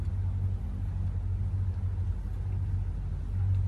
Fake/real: real